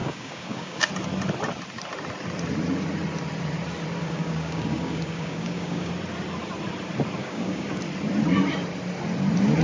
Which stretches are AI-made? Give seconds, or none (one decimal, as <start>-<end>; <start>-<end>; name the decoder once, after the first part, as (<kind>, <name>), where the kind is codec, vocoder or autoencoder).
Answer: 0.0-0.9 (codec, DAC); 4.0-5.9; 7.2-7.8